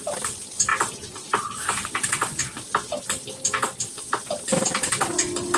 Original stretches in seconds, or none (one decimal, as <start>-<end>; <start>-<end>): 0.0-5.6